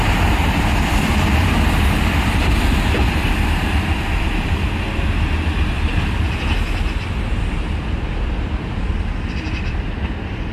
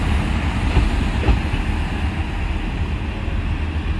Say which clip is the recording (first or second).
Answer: second